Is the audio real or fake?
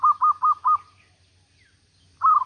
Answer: real